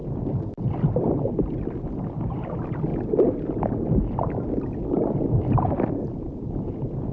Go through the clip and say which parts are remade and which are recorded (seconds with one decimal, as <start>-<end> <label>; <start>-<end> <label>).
0.0-2.9 recorded; 2.9-3.5 remade; 3.5-7.1 recorded